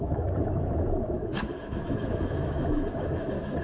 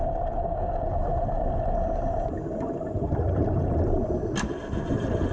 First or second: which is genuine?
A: second